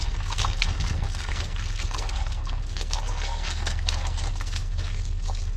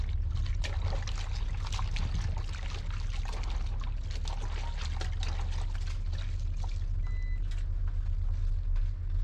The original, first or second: second